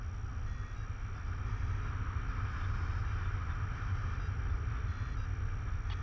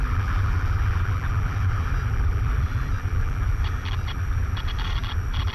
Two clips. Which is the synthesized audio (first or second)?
second